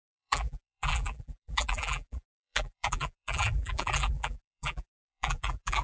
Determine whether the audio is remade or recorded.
remade